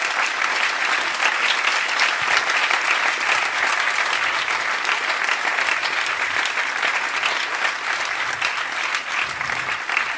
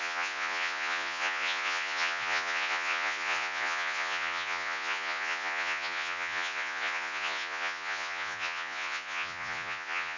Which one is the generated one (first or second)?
second